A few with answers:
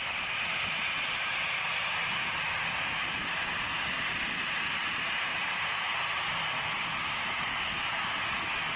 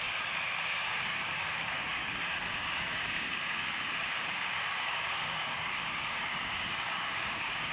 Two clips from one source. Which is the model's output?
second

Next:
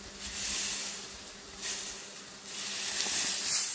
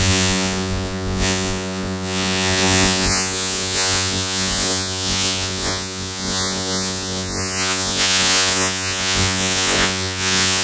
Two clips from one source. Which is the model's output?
second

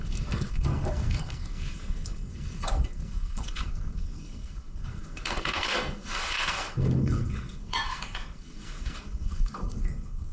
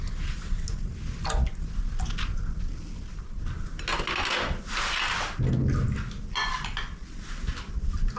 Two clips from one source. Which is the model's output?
first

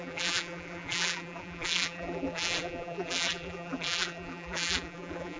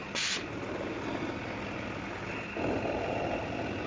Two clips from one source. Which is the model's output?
first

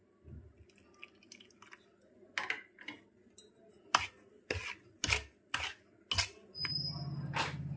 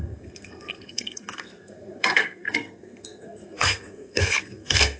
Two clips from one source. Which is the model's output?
second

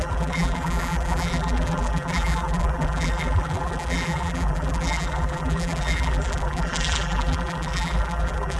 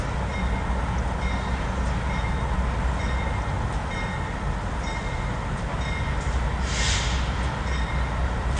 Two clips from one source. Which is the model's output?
first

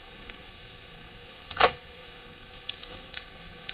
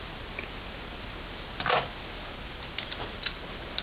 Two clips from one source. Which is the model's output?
first